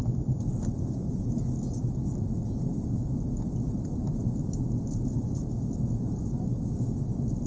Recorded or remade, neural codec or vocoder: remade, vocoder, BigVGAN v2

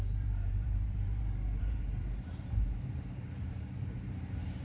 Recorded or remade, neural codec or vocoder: remade, vocoder, BigVGAN v2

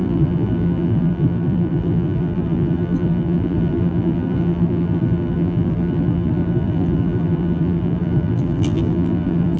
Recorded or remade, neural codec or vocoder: remade, vocoder, BigVGAN v2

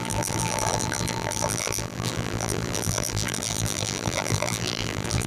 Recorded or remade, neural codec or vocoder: remade, vocoder, BigVGAN v2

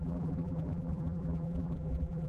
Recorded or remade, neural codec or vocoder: remade, vocoder, BigVGAN v2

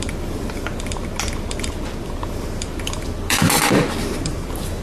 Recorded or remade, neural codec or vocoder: remade, vocoder, BigVGAN v2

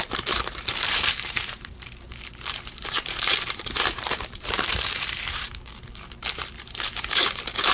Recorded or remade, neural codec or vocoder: remade, vocoder, BigVGAN v2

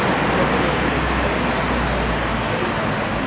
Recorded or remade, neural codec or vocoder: recorded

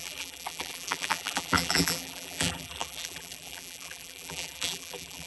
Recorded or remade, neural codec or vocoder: remade, vocoder, BigVGAN v2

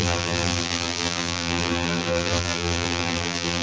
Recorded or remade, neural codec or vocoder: remade, vocoder, BigVGAN v2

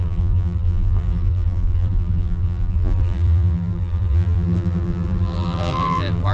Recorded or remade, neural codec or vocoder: remade, vocoder, BigVGAN v2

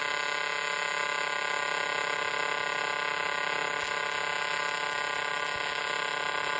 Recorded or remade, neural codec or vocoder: recorded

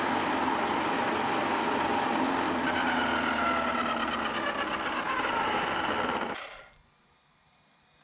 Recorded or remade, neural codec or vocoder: recorded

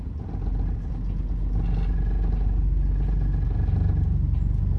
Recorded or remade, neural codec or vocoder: recorded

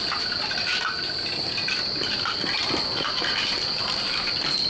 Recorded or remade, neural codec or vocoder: remade, vocoder, BigVGAN v2